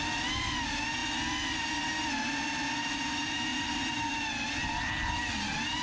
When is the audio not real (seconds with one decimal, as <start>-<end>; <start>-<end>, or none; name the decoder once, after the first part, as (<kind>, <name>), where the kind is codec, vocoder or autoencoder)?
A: none

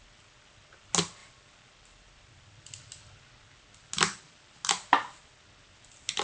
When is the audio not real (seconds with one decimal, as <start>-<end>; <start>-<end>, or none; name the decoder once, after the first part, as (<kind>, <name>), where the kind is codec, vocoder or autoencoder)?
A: none

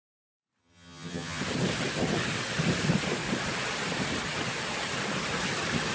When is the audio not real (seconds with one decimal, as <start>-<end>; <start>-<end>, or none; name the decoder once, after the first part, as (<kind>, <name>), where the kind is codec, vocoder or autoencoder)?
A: 0.6-1.4 (vocoder, HiFi-GAN)

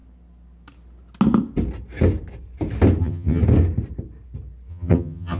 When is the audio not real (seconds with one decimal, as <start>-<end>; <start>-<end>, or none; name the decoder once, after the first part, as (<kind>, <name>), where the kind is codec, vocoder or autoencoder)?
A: 3.0-3.4 (vocoder, HiFi-GAN); 4.7-5.4

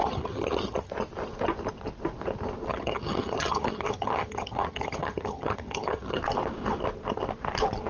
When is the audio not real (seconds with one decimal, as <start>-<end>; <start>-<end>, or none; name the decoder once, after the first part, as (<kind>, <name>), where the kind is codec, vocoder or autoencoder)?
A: 0.0-0.9 (vocoder, HiFi-GAN); 2.7-6.2

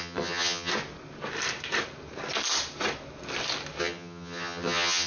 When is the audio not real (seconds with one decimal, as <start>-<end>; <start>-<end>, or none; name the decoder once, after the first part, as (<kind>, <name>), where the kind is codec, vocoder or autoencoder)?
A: 0.0-0.7 (vocoder, HiFi-GAN); 3.8-5.1